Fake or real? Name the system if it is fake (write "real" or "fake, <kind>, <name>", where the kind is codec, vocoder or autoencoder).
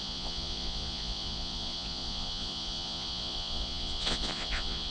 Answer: fake, vocoder, Vocos